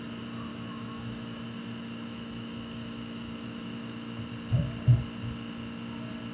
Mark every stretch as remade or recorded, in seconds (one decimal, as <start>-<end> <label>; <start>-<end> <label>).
0.0-0.5 recorded; 0.5-4.3 remade; 4.3-6.3 recorded